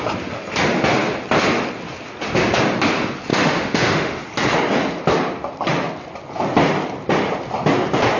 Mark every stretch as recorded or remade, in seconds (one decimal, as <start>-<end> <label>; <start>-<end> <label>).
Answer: 0.0-3.3 recorded; 3.3-4.2 remade; 4.2-8.2 recorded